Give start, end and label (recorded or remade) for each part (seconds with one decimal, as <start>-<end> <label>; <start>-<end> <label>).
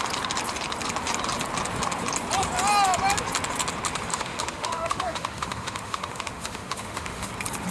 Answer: 0.0-4.1 recorded; 4.1-7.3 remade; 7.3-7.7 recorded